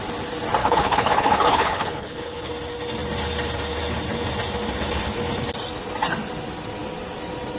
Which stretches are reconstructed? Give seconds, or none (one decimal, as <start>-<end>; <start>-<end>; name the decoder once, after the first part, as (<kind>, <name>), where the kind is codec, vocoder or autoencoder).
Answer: 0.6-2.5 (codec, HILCodec)